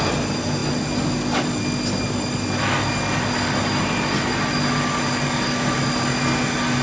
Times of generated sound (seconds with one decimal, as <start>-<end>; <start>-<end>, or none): none